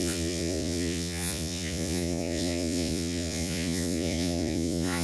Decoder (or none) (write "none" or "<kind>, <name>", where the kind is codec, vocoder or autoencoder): vocoder, Vocos